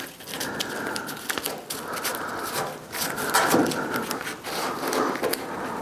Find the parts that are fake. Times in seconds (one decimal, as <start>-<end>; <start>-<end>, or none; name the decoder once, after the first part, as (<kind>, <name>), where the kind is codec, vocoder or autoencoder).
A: none